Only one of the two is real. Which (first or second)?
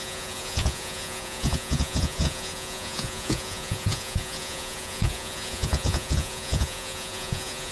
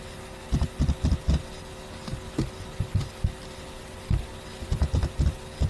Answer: second